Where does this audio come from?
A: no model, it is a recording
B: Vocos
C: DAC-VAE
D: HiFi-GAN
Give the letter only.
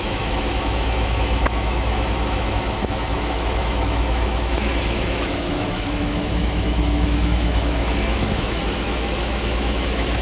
C